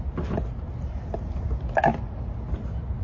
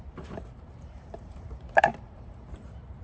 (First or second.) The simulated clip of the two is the second